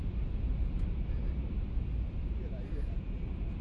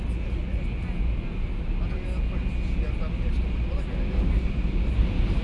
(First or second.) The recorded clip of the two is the second